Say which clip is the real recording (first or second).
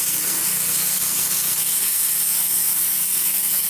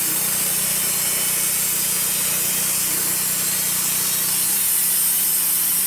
second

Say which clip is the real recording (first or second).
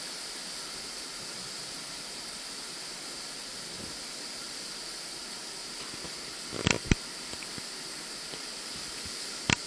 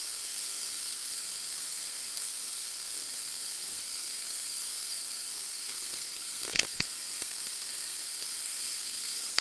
first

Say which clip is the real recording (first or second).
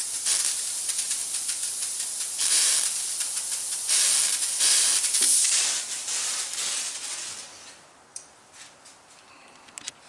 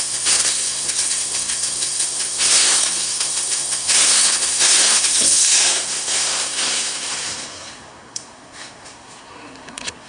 first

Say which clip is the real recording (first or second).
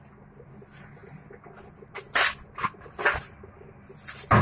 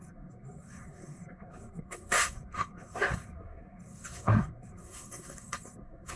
first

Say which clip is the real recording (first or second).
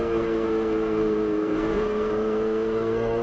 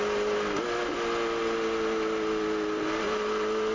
second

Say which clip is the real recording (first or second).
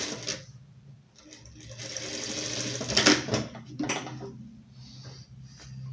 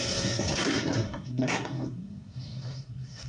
first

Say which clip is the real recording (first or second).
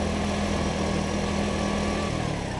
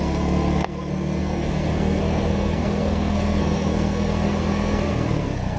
first